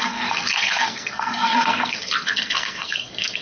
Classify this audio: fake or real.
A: fake